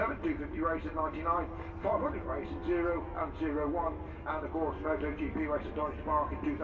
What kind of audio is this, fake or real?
real